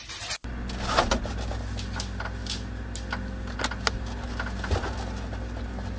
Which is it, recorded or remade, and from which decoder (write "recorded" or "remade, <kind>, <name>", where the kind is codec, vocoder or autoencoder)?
recorded